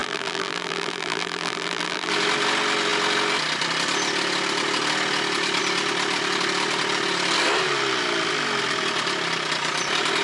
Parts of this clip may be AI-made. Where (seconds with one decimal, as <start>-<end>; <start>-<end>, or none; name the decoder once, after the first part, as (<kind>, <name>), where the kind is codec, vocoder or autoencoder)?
0.0-2.1 (vocoder, BigVGAN v2)